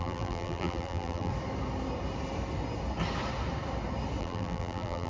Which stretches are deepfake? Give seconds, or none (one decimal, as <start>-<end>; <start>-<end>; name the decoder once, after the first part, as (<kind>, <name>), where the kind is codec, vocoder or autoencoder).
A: 0.0-1.3 (vocoder, BigVGAN v2); 4.2-5.1